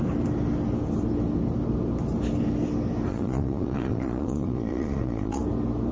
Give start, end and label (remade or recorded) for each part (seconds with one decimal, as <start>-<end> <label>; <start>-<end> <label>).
0.0-3.1 recorded; 3.1-5.4 remade; 5.4-5.9 recorded